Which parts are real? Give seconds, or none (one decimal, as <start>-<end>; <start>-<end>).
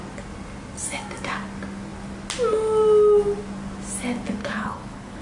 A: 0.0-4.4